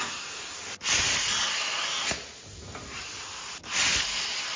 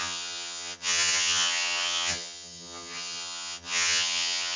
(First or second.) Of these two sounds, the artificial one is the second